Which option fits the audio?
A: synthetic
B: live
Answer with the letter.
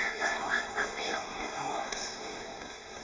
A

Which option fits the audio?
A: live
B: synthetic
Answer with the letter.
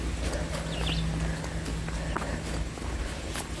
A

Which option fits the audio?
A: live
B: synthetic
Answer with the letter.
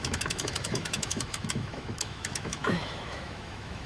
B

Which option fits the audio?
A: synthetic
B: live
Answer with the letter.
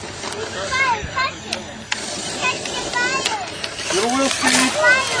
B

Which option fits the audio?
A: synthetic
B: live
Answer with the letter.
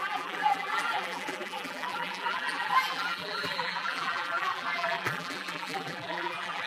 A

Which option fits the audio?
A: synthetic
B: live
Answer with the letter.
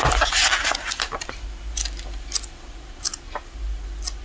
B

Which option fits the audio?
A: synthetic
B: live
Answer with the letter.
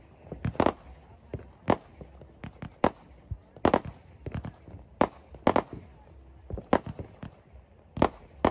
B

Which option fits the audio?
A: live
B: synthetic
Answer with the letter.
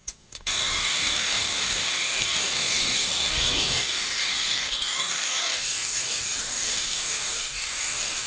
B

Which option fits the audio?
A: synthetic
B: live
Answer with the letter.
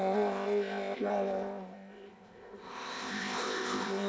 A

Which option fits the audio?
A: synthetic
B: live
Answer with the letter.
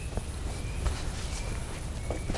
B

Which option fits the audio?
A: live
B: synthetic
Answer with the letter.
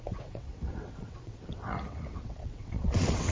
B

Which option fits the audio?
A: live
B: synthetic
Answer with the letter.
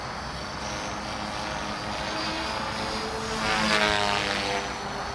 A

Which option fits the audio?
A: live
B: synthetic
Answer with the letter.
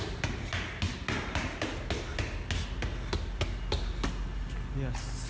A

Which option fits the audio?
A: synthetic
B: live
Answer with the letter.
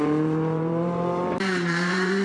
A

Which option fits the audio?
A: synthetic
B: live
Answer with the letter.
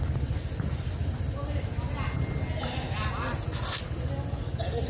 B